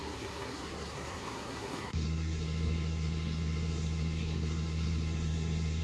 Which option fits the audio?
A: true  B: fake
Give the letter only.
B